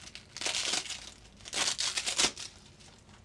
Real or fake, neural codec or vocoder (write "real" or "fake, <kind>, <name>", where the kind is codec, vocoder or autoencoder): real